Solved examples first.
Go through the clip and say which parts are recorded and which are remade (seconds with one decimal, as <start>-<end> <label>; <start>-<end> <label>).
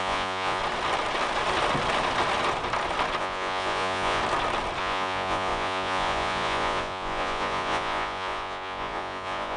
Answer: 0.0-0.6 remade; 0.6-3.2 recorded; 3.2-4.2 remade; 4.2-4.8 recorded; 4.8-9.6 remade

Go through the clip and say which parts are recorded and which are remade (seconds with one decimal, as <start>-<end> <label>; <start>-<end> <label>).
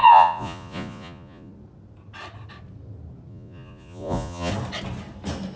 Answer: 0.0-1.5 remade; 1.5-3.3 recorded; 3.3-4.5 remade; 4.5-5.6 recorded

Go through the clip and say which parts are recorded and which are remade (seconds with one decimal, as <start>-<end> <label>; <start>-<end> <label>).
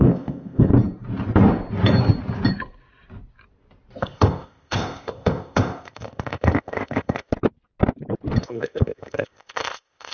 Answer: 0.0-0.7 remade; 0.7-4.0 recorded; 4.0-7.3 remade; 7.3-8.4 recorded; 8.4-10.1 remade